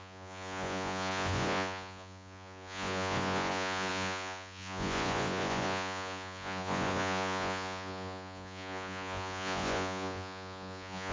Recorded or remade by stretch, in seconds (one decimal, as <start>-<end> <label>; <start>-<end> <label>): 0.0-11.1 remade